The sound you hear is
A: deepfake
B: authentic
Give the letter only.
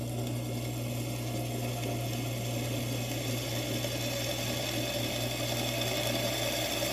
B